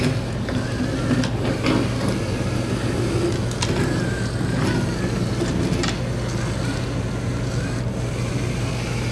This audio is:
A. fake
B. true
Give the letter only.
B